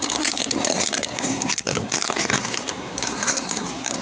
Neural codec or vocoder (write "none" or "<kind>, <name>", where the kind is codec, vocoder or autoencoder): codec, SNAC